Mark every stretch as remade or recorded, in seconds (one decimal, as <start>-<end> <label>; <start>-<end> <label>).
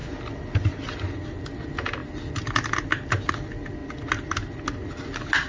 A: 0.0-5.5 recorded